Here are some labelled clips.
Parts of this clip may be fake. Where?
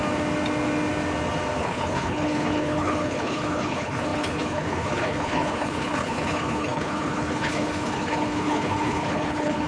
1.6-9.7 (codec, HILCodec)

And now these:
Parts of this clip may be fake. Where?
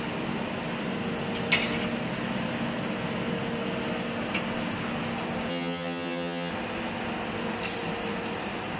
5.5-6.5 (vocoder, HiFi-GAN)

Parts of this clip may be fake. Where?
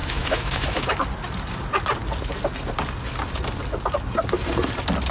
0.0-1.0 (autoencoder, DAC-VAE)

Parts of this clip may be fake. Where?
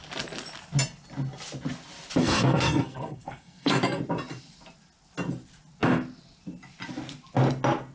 2.2-4.0 (codec, SNAC)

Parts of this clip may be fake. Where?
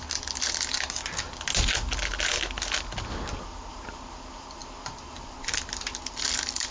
none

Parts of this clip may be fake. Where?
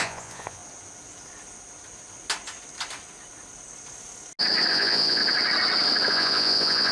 0.0-0.6 (vocoder, Vocos); 4.7-5.2; 6.1-6.9